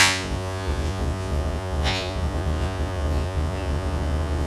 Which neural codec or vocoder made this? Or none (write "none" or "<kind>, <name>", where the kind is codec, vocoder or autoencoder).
vocoder, Vocos